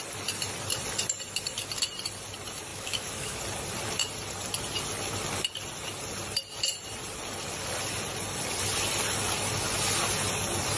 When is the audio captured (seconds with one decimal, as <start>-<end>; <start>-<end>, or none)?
0.0-2.7; 3.4-10.8